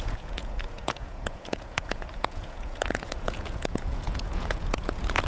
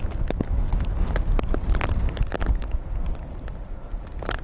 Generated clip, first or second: first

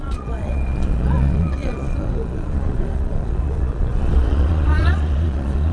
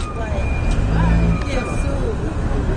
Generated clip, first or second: first